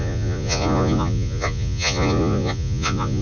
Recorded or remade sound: remade